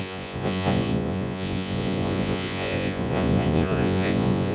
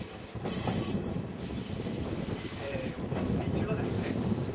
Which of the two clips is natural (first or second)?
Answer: second